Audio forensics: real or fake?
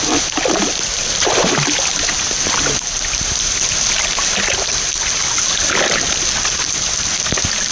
real